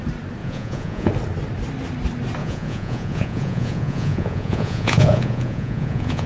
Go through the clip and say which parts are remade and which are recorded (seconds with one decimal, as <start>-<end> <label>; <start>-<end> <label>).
0.0-0.4 recorded; 0.4-1.1 remade; 1.1-2.4 recorded; 2.4-6.3 remade